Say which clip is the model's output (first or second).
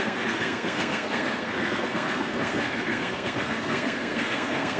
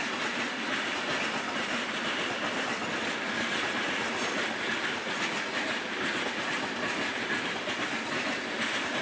first